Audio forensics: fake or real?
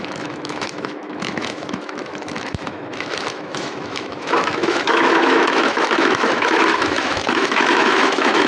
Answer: fake